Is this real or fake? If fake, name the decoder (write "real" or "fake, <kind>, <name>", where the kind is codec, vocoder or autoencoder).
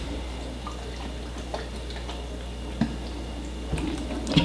real